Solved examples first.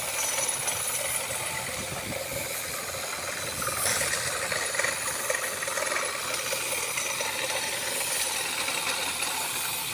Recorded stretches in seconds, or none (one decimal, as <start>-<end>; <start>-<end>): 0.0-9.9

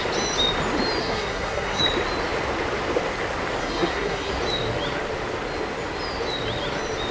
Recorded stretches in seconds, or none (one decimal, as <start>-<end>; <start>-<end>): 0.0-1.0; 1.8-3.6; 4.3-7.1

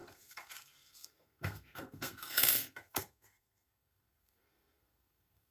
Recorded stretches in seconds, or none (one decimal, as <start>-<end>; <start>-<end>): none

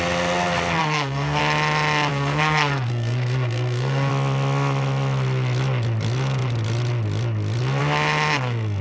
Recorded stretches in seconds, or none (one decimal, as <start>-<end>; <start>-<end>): 0.0-0.8; 1.4-2.1; 4.1-8.8

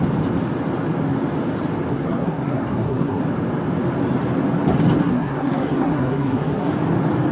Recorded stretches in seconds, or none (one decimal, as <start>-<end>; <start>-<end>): 0.0-1.9; 3.2-5.0; 6.7-7.3

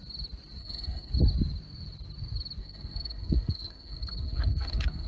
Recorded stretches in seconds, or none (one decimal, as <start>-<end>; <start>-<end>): 0.0-0.6; 1.1-2.6

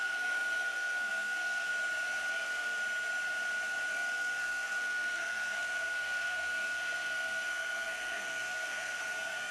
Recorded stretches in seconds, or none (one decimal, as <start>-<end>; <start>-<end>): 1.7-2.3; 2.8-3.9